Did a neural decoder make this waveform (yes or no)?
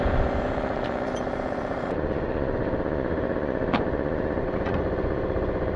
yes